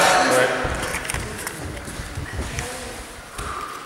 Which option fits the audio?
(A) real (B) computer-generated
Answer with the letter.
A